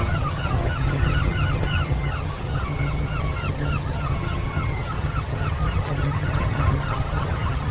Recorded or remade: remade